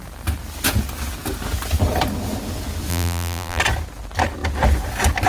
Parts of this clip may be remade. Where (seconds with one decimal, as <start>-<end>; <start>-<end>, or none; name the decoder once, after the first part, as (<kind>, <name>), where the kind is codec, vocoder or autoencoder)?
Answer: 2.9-3.6 (vocoder, BigVGAN v2)